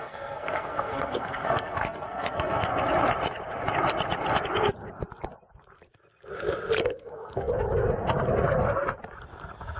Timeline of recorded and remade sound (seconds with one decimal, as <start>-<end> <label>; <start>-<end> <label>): 0.0-2.7 remade; 2.7-6.8 recorded; 6.8-7.5 remade; 7.5-9.8 recorded